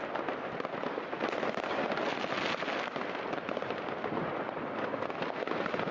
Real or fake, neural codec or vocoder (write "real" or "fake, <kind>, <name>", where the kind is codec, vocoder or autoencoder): real